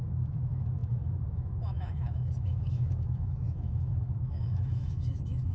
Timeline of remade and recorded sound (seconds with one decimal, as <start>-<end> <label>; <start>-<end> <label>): 0.0-5.5 remade